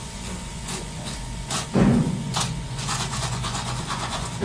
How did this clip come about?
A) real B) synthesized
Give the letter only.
B